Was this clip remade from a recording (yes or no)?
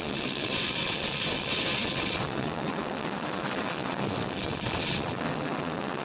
yes